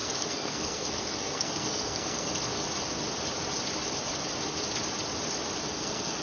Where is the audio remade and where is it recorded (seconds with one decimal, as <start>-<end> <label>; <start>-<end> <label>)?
0.0-2.3 remade; 2.3-5.7 recorded; 5.7-6.2 remade